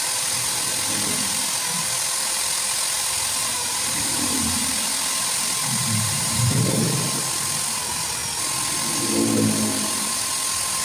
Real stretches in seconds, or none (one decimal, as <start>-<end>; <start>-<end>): 0.0-3.4; 4.6-5.8; 7.3-10.8